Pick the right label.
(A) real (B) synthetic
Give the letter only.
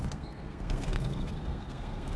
B